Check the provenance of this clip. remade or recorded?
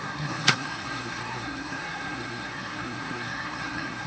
remade